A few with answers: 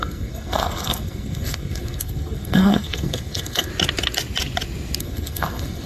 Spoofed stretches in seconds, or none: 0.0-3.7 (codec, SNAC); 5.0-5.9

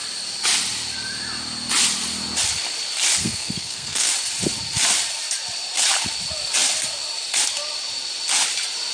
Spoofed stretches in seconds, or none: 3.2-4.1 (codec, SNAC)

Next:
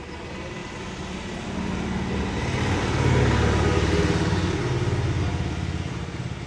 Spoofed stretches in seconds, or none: none

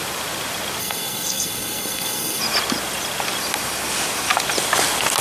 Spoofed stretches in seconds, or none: 0.8-2.4 (codec, SNAC)

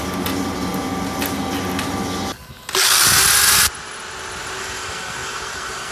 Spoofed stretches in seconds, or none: 4.6-5.9 (codec, SNAC)

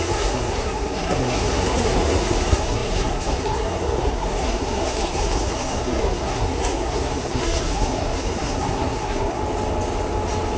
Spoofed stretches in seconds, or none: 0.0-9.4 (codec, SNAC)